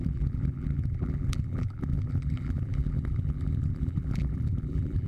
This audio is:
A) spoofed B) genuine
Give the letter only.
A